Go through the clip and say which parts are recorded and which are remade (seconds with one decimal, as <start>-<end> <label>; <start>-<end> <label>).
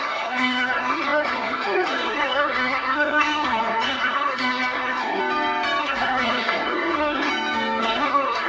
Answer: 0.0-5.2 remade; 5.2-5.8 recorded; 5.8-7.3 remade; 7.3-7.8 recorded; 7.8-8.5 remade